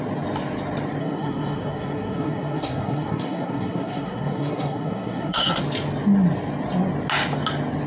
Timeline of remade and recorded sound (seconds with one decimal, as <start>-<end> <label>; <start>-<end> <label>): 0.0-1.0 recorded; 1.0-5.6 remade; 5.6-7.9 recorded